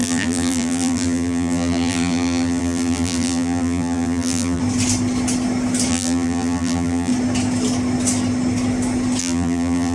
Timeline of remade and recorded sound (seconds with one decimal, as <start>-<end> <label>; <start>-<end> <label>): 0.0-4.6 remade; 4.6-5.9 recorded; 5.9-7.1 remade; 7.1-9.2 recorded; 9.2-9.9 remade